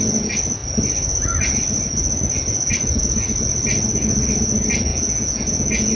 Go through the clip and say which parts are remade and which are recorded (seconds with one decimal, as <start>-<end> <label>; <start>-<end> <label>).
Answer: 0.0-4.9 recorded; 4.9-5.9 remade